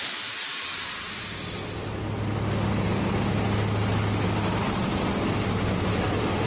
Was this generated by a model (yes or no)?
no